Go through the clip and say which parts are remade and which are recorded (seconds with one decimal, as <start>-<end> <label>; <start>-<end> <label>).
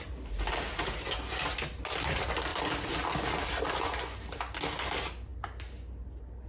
0.0-2.5 recorded; 2.5-3.6 remade; 3.6-6.5 recorded